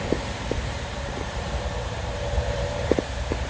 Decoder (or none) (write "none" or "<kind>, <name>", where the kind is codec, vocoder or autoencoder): vocoder, BigVGAN v2